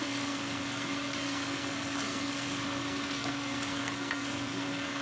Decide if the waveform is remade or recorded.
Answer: remade